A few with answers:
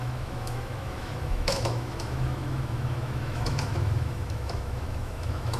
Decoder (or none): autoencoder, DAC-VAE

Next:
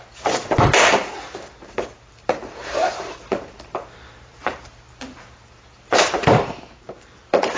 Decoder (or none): vocoder, BigVGAN v2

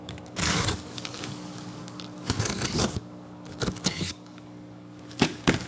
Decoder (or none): codec, DAC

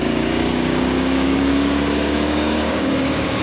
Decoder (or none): codec, DAC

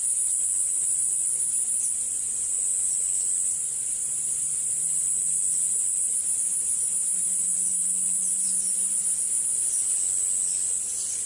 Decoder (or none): none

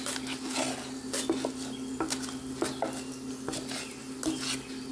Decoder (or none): none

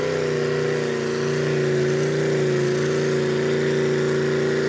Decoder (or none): none